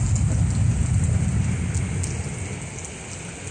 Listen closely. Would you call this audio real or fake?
real